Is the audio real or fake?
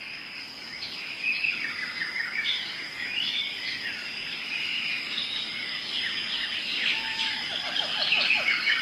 fake